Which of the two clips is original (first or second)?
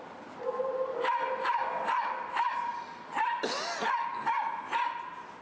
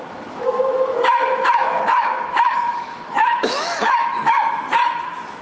first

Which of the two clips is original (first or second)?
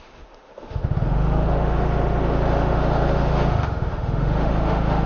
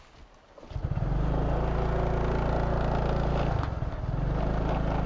second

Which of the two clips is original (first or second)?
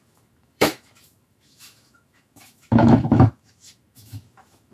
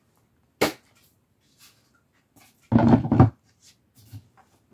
second